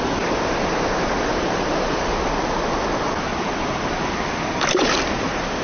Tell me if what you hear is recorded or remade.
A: recorded